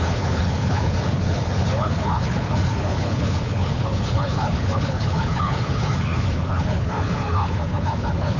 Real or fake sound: fake